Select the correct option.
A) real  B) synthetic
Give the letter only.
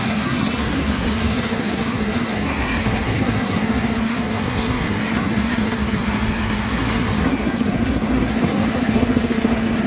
B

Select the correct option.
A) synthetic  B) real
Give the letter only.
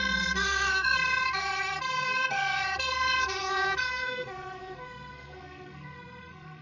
A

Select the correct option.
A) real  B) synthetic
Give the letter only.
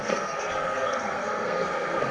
B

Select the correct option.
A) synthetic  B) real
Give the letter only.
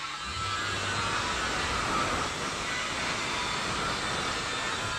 B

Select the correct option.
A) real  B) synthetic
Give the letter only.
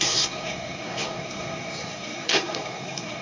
B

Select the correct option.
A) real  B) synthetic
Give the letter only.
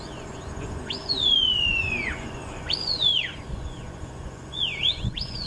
B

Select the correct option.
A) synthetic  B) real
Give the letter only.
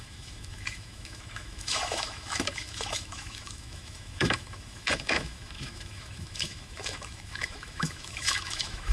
A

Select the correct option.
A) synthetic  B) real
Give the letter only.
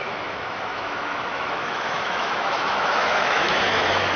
A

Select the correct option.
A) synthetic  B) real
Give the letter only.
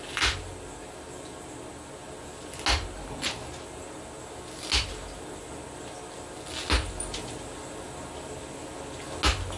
B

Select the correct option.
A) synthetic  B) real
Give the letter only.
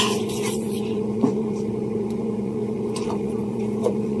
A